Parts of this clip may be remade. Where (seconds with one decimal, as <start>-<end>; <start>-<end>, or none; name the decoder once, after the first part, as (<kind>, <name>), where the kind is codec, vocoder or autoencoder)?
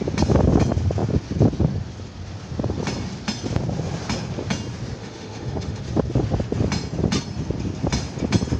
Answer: 5.0-5.8 (autoencoder, DAC-VAE)